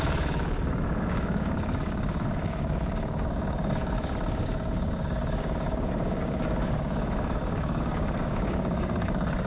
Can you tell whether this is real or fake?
fake